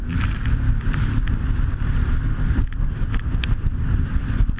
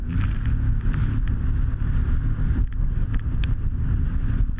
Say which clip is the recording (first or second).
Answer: second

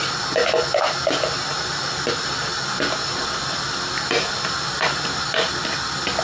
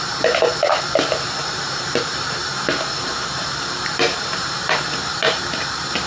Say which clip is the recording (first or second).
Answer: first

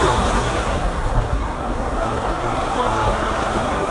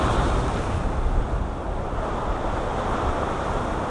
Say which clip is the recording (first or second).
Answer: second